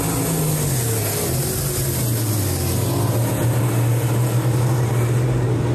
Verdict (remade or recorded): recorded